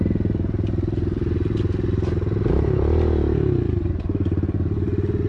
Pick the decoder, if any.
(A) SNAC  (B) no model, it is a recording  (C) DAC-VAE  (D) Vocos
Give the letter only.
B